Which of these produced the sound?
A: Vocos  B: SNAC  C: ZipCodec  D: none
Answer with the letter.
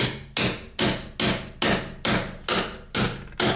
D